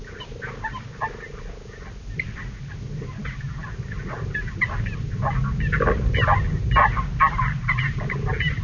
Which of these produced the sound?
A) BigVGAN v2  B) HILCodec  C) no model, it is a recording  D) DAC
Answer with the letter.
C